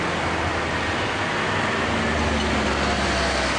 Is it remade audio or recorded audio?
recorded